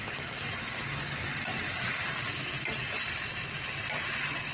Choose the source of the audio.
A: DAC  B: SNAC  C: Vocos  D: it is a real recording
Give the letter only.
D